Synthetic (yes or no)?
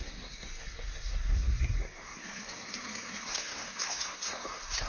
yes